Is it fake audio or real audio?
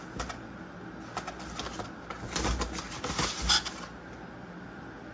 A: real